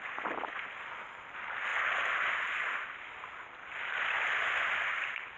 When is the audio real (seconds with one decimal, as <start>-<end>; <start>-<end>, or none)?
0.0-5.4